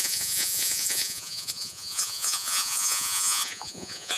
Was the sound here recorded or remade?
remade